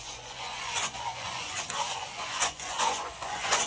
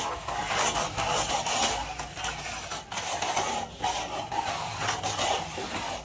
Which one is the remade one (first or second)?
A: first